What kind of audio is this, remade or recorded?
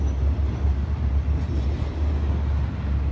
recorded